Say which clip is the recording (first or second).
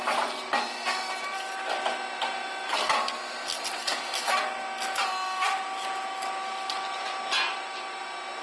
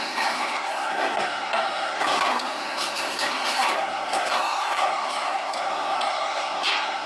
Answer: first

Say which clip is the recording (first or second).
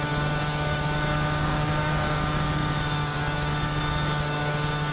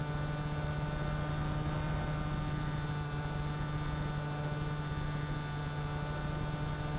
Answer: second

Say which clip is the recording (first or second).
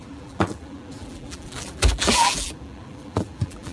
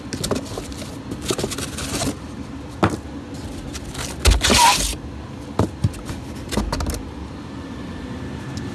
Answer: second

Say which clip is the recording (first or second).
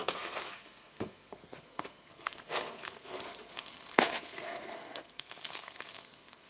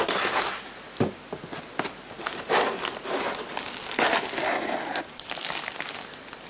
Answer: second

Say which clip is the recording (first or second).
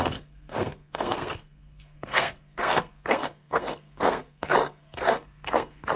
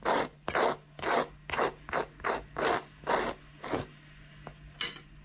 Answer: second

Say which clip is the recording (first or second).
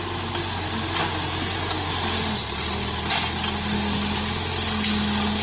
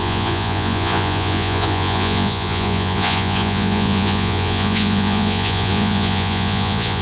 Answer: first